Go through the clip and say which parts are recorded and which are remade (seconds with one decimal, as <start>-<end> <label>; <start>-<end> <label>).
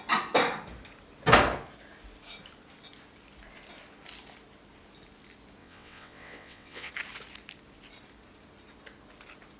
0.0-5.6 recorded; 5.6-6.9 remade; 6.9-9.6 recorded